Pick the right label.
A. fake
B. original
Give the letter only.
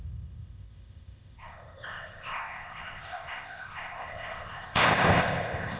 A